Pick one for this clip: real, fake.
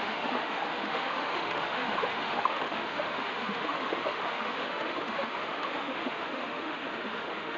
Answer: fake